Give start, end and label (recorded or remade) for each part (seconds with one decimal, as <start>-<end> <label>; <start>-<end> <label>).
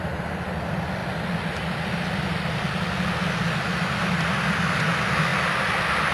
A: 0.0-6.1 recorded